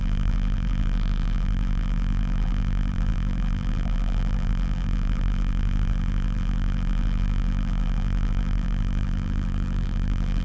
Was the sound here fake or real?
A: fake